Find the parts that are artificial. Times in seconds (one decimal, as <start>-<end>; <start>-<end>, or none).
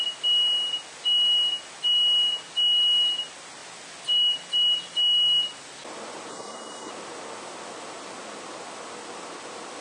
6.3-6.9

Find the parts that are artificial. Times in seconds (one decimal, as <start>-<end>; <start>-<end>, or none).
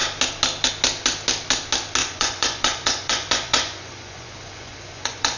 2.0-5.4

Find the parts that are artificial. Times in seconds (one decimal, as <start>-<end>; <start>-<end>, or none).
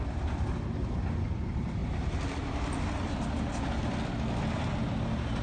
none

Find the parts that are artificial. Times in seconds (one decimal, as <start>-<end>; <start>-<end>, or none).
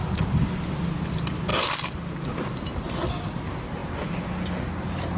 none